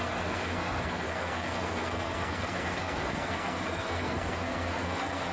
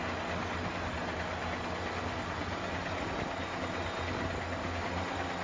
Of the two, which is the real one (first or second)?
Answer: second